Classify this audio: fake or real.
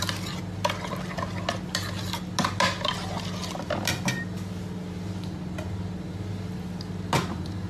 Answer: real